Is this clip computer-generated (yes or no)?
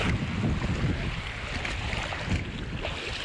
no